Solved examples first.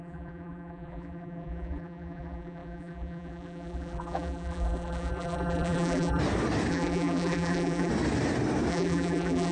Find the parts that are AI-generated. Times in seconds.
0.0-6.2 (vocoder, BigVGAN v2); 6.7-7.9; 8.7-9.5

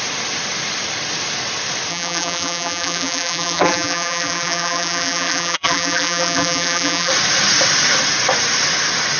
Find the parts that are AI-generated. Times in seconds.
1.9-7.1 (vocoder, BigVGAN v2)

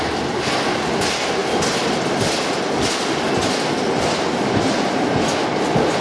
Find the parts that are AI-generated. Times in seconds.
none

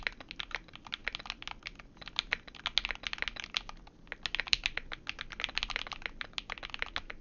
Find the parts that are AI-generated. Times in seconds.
none

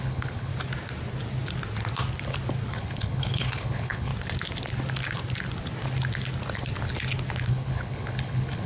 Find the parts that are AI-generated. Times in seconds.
0.0-0.5 (codec, HILCodec); 2.7-4.1; 7.5-8.7

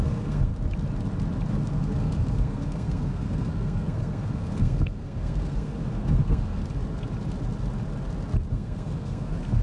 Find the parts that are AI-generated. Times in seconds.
0.0-0.5 (codec, SNAC); 1.5-6.6; 8.5-9.6

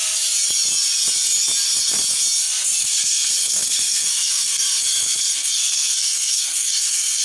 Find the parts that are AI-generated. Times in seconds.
2.8-7.2 (codec, SNAC)